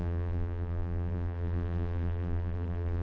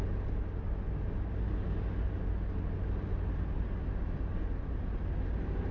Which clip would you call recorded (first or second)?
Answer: second